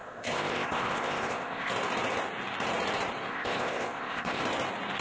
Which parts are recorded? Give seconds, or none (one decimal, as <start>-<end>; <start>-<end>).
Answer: 1.7-3.3; 4.4-5.0